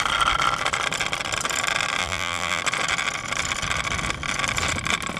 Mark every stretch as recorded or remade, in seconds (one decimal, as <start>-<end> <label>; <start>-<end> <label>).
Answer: 0.0-2.0 recorded; 2.0-2.6 remade; 2.6-5.2 recorded